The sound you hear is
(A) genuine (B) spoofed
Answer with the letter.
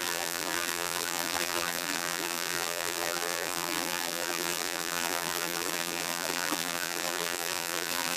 B